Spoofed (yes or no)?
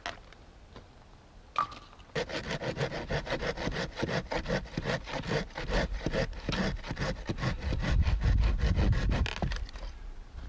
no